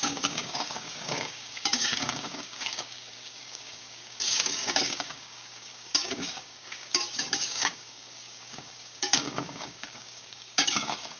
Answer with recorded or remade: remade